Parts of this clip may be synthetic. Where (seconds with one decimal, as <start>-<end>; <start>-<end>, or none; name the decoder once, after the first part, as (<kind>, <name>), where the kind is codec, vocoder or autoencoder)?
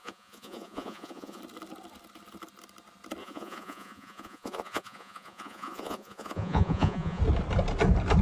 0.0-1.4 (vocoder, Vocos); 3.2-7.2